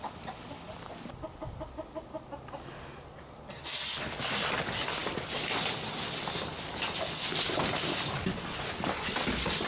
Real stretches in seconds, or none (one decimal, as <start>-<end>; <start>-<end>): 0.0-9.7